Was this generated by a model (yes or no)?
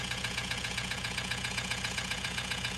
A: yes